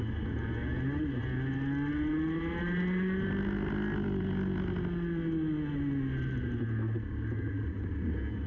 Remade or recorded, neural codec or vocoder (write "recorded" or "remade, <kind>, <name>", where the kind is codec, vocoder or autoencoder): recorded